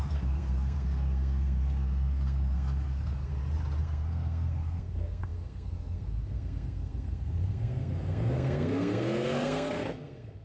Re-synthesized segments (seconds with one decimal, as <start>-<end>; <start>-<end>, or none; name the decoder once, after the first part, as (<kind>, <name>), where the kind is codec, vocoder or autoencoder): 0.0-3.3 (codec, SNAC); 3.8-10.4